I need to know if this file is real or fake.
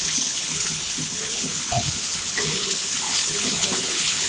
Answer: fake